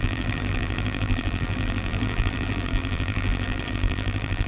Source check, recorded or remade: remade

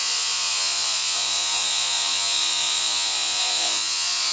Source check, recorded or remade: remade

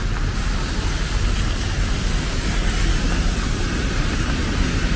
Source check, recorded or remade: recorded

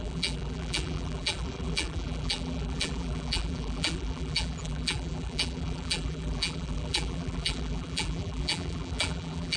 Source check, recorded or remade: remade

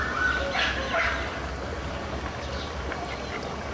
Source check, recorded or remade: recorded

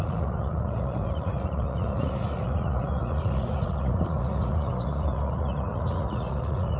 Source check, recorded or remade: remade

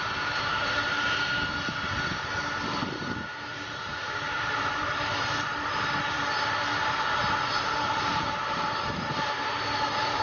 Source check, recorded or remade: remade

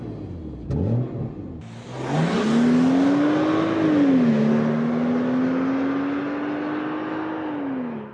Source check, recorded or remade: recorded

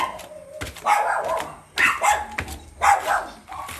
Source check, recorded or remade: recorded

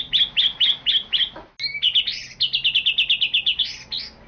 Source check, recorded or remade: recorded